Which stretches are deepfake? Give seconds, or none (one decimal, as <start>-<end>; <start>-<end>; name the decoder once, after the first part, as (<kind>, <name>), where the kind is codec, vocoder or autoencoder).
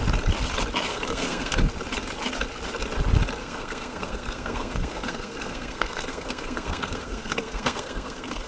0.9-1.6 (codec, SNAC); 3.4-8.5